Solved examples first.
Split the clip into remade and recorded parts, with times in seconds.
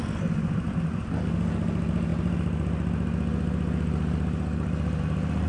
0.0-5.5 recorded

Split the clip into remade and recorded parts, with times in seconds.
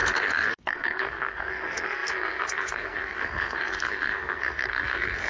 0.0-5.3 remade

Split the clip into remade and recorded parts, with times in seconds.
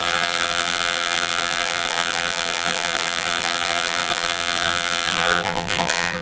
0.0-6.2 remade